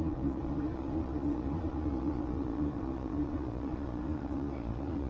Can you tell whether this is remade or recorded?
remade